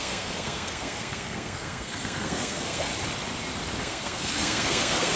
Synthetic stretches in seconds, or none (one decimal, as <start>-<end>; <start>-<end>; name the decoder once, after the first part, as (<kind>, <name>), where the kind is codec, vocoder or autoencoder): 0.0-2.9 (codec, SNAC); 3.8-5.2